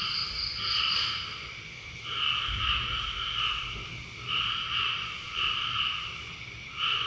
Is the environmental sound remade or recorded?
recorded